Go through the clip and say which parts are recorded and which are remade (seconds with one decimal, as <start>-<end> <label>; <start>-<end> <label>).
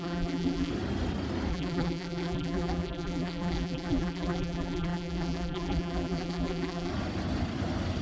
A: 0.0-0.7 remade; 0.7-1.5 recorded; 1.5-6.9 remade; 6.9-8.0 recorded